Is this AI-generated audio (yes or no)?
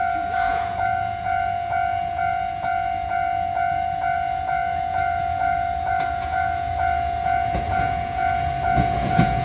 yes